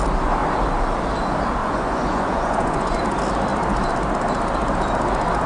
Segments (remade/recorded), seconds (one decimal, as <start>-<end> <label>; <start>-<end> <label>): 0.0-1.6 recorded; 1.6-3.0 remade; 3.0-5.5 recorded

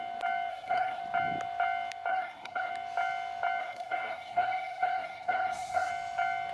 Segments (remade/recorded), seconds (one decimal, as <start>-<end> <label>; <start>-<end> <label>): 0.0-0.5 recorded; 0.5-1.0 remade; 1.0-2.1 recorded; 2.1-2.7 remade; 2.7-3.6 recorded; 3.6-5.9 remade; 5.9-6.5 recorded

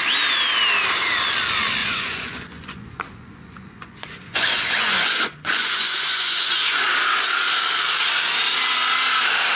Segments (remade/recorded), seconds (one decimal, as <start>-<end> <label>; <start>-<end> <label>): 0.0-1.8 recorded; 1.8-6.9 remade; 6.9-9.6 recorded